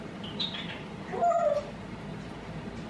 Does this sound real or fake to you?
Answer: fake